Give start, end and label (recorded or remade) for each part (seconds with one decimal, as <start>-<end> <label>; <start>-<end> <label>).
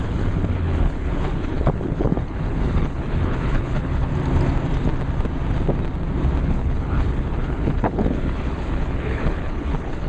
0.0-4.1 remade; 4.1-6.4 recorded; 6.4-10.1 remade